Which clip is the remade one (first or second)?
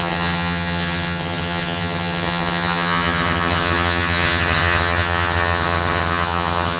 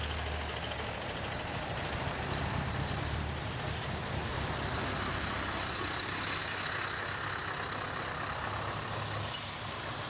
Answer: first